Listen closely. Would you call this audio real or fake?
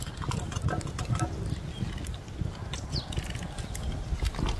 real